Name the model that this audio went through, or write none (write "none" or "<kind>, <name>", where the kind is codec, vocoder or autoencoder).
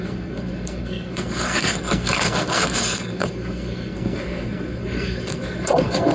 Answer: codec, SNAC